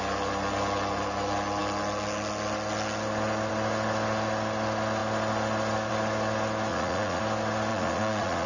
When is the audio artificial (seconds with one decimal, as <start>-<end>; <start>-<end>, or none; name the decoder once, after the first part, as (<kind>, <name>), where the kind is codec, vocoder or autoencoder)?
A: 6.7-7.2 (vocoder, Vocos); 7.7-8.5